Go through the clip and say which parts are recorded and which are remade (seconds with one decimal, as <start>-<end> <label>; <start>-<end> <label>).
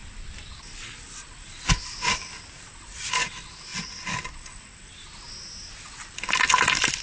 0.0-7.0 recorded